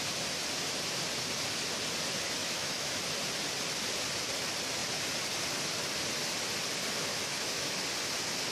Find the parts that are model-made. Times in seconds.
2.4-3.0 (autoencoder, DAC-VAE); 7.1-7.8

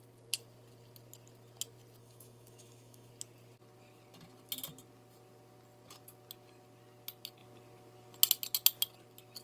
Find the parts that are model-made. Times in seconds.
2.0-3.1 (autoencoder, DAC-VAE)

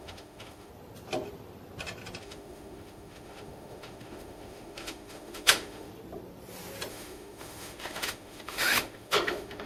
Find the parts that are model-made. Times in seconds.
0.0-0.7 (autoencoder, DAC-VAE); 2.2-5.9; 6.9-9.7

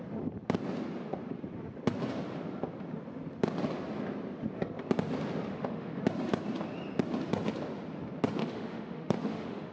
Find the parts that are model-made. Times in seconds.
5.5-6.0 (autoencoder, DAC-VAE); 8.4-9.7

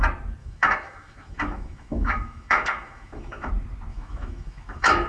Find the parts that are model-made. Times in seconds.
0.4-3.5 (autoencoder, DAC-VAE); 3.9-5.1

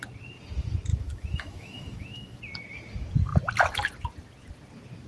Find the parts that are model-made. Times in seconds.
0.9-2.4 (autoencoder, DAC-VAE)

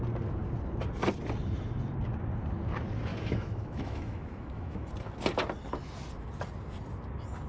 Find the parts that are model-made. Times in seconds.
3.1-4.9 (autoencoder, DAC-VAE)